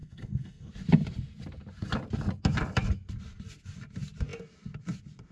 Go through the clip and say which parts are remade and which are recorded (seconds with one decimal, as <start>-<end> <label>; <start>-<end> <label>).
0.0-0.7 remade; 0.7-5.3 recorded